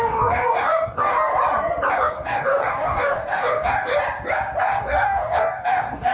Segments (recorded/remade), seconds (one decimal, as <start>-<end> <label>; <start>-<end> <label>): 0.0-1.3 remade; 1.3-1.9 recorded; 1.9-3.9 remade; 3.9-4.6 recorded; 4.6-6.1 remade